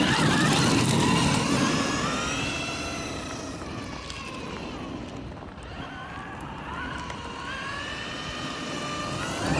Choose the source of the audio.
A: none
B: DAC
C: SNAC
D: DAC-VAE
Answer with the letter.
A